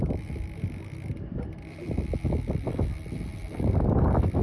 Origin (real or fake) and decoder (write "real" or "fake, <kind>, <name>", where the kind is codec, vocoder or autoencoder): real